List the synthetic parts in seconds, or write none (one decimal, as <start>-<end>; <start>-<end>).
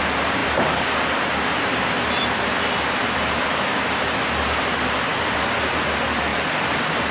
none